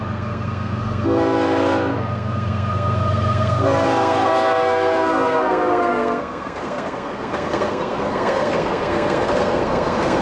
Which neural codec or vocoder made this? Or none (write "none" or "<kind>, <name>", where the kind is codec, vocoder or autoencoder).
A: codec, SNAC